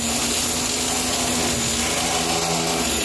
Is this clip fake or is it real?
real